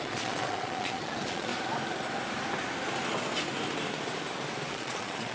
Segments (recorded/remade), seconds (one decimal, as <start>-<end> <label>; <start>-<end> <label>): 0.0-1.5 remade; 1.5-4.7 recorded; 4.7-5.3 remade